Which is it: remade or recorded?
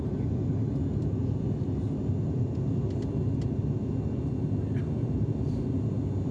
recorded